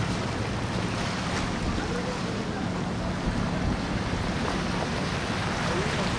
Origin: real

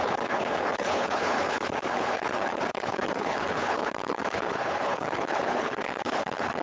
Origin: fake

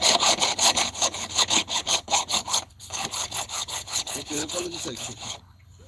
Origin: fake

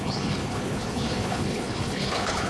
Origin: fake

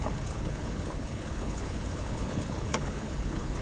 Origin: fake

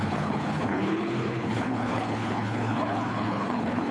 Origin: fake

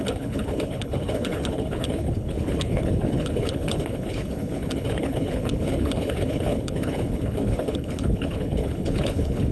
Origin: fake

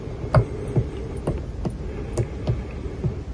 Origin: real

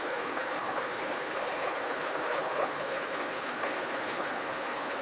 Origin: fake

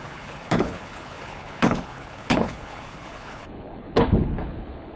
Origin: fake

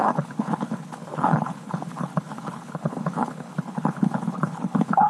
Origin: fake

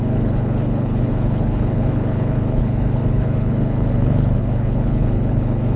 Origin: fake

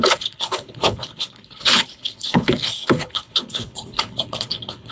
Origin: fake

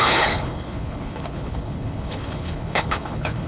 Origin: fake